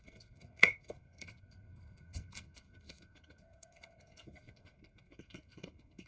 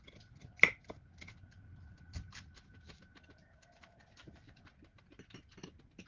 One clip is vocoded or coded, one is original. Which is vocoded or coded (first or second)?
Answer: first